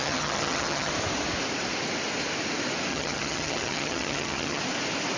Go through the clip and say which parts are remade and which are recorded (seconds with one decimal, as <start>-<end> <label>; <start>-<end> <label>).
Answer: 0.0-0.9 remade; 0.9-2.9 recorded; 2.9-4.6 remade; 4.6-5.2 recorded